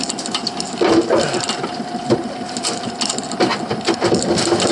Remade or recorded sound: recorded